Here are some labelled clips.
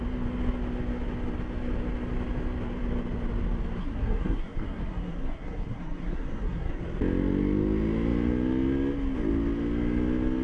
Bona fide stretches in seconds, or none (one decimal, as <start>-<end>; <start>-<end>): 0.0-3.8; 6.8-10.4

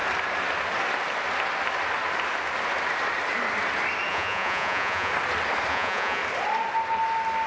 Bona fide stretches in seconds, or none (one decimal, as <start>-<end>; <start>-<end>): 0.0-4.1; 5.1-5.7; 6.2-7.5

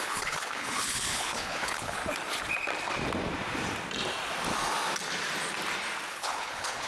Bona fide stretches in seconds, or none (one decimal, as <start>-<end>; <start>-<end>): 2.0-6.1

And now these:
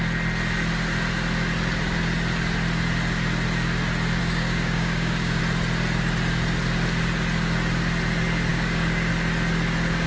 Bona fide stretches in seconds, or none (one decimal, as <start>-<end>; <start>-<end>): 0.0-4.2; 5.4-8.5; 9.1-10.1

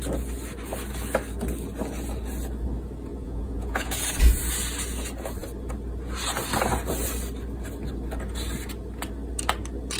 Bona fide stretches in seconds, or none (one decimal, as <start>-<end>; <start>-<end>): 0.0-3.1; 3.9-10.0

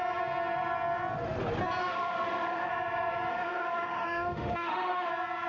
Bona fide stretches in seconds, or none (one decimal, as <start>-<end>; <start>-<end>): 0.0-1.8; 2.7-3.3; 5.1-5.5

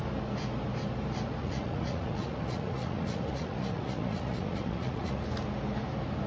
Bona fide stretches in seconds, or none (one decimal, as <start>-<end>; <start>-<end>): 0.0-1.4; 5.2-6.3